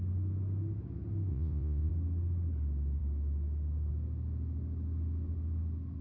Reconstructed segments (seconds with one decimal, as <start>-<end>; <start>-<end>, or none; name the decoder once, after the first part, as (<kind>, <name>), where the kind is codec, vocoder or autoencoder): 1.3-1.9 (vocoder, Vocos)